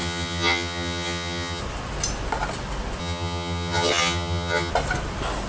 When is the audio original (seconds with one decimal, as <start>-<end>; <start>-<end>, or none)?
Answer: 1.6-3.0; 4.7-5.5

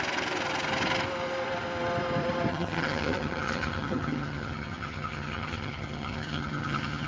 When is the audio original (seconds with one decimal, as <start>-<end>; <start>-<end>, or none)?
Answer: 0.0-2.5

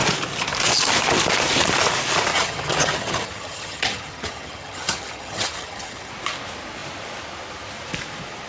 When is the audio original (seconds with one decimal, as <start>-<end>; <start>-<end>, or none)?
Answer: 0.0-2.3; 6.1-8.5